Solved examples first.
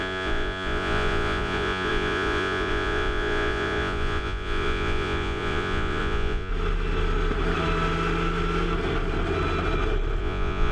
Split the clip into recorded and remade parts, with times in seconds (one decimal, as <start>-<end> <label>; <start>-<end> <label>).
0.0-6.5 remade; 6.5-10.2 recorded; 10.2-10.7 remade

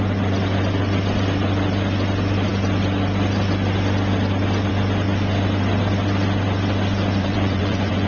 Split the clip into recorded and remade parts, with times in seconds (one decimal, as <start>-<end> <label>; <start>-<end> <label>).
0.0-7.2 recorded; 7.2-8.1 remade

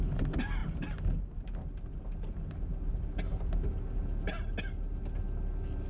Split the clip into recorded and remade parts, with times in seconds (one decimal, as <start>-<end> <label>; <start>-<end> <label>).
0.0-5.9 recorded

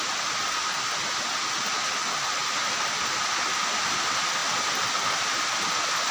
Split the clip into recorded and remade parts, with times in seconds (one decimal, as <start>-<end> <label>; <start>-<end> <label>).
0.0-6.1 recorded